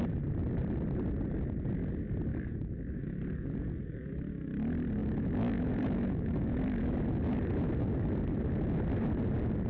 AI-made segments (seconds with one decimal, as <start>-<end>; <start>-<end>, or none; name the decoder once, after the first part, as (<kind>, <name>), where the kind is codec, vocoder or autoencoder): 2.3-3.2 (autoencoder, DAC-VAE); 5.0-6.8